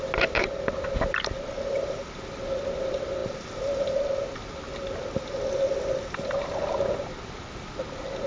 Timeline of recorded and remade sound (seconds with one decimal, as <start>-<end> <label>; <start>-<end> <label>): 0.0-8.3 recorded